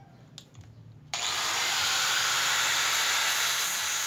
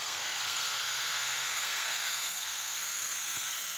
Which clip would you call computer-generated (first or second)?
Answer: second